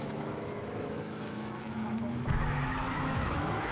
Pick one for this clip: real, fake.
fake